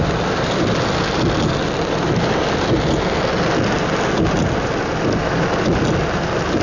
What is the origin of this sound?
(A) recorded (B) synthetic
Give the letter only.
A